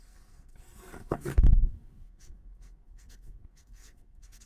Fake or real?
fake